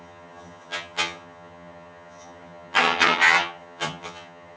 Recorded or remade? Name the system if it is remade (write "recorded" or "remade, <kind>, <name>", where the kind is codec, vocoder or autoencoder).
remade, vocoder, HiFi-GAN